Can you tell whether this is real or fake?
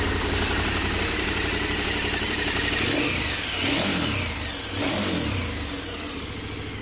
real